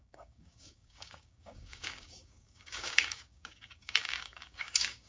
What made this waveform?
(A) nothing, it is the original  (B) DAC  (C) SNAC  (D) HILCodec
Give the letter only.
B